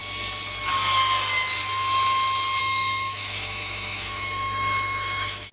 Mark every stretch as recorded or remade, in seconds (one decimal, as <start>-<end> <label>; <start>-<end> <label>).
0.0-2.6 recorded; 2.6-5.5 remade